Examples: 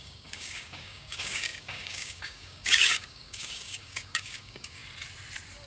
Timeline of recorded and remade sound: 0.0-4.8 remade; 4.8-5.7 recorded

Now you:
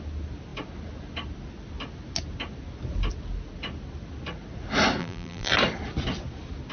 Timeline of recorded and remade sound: 0.0-5.0 recorded; 5.0-5.5 remade; 5.5-6.7 recorded

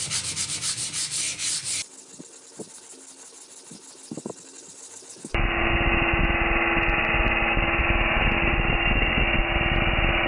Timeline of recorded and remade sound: 0.0-10.3 recorded